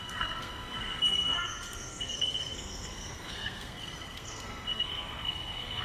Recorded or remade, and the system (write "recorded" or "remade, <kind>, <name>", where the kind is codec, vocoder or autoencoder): remade, codec, SNAC